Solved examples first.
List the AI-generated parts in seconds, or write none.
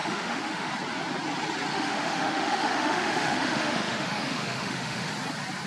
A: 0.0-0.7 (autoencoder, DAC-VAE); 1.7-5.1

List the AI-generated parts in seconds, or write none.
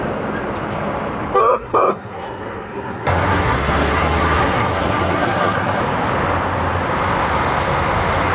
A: 1.4-5.8 (codec, SNAC)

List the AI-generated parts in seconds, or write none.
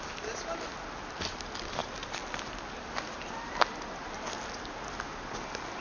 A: none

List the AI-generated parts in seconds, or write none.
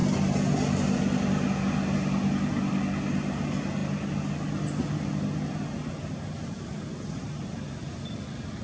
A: none